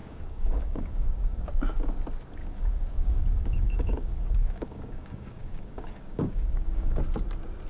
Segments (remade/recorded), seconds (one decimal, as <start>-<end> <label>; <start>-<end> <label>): 0.0-1.5 remade; 1.5-2.4 recorded; 2.4-7.0 remade; 7.0-7.7 recorded